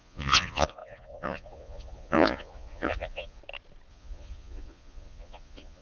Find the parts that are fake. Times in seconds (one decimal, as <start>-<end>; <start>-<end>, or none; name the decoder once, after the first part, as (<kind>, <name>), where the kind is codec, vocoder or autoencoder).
0.0-3.4 (vocoder, Vocos); 3.9-5.8